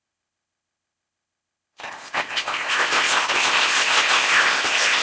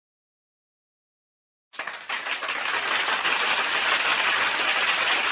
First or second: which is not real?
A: first